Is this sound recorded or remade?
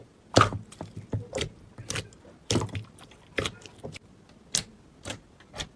recorded